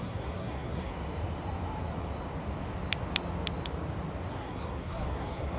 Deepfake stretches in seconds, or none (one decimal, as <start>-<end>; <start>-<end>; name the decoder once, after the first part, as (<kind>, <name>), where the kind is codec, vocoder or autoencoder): 0.0-0.9 (codec, SNAC); 4.3-5.6